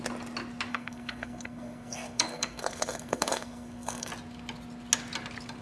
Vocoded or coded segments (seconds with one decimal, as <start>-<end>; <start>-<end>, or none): 0.7-4.1